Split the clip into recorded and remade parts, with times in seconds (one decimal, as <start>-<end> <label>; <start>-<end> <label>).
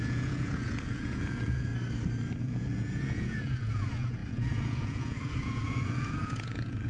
0.0-1.7 remade; 1.7-2.4 recorded; 2.4-6.9 remade